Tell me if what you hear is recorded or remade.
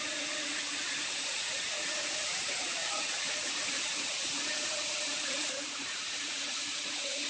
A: remade